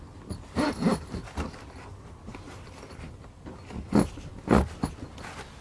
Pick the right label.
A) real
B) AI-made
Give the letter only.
A